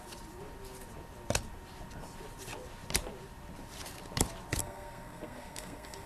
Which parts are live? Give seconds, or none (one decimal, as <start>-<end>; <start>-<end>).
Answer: 0.0-4.6